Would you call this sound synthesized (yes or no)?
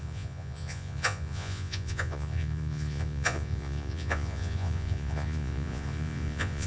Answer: yes